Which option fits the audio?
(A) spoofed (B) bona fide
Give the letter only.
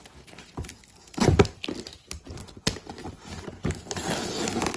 B